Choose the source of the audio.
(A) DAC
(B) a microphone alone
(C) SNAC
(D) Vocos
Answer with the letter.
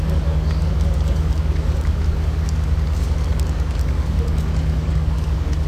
A